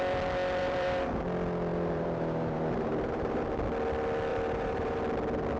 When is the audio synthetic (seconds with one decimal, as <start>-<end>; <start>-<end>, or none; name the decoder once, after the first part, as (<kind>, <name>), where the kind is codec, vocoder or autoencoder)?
0.6-1.2 (vocoder, BigVGAN v2); 1.7-3.5; 4.3-5.0